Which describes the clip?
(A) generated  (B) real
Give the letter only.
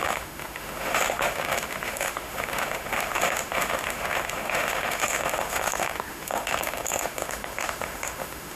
A